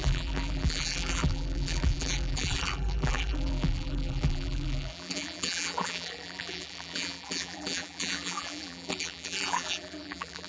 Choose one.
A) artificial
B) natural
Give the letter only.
A